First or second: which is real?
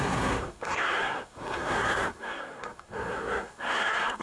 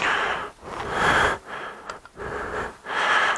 second